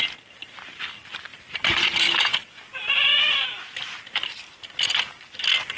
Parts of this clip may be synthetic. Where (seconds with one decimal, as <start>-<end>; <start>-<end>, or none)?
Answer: none